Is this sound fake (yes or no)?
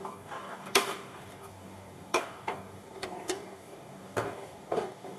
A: yes